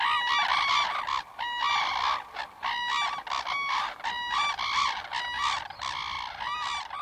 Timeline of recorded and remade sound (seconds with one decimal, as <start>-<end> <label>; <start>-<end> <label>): 0.0-7.0 recorded